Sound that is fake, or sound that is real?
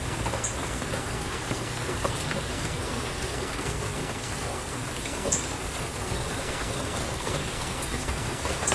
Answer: fake